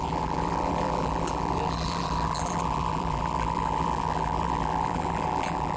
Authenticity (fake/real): fake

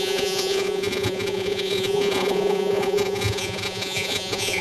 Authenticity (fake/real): fake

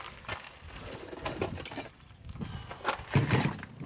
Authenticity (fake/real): real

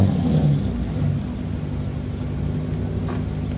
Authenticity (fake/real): real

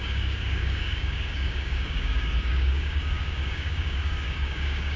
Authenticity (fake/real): fake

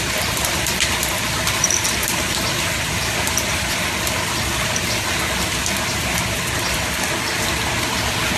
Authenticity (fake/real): fake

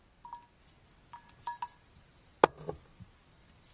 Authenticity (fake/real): real